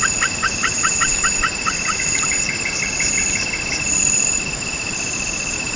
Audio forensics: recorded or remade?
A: remade